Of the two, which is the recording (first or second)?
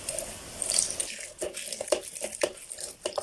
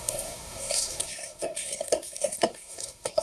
first